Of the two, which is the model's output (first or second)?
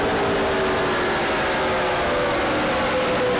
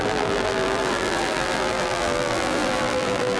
second